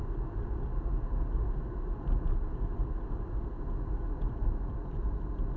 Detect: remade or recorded recorded